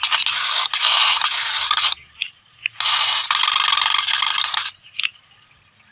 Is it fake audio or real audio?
real